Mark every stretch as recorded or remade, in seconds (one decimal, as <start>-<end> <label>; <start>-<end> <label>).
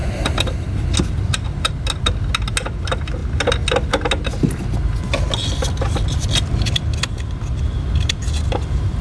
0.0-9.0 recorded